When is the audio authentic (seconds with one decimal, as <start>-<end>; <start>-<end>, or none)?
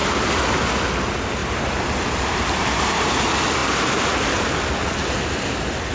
0.0-1.4; 3.1-5.9